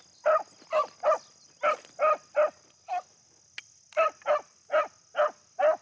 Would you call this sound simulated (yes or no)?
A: no